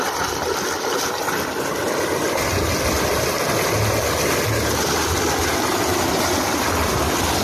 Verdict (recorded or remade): recorded